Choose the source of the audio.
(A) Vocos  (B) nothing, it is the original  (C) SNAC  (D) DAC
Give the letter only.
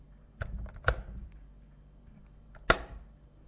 B